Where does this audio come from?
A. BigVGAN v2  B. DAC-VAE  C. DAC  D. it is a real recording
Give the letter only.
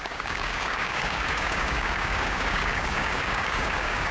C